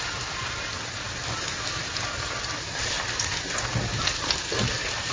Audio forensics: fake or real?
real